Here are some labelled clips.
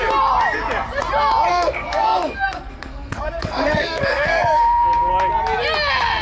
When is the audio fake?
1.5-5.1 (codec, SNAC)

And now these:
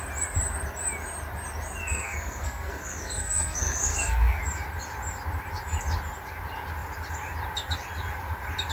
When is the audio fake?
1.8-4.4 (codec, SNAC)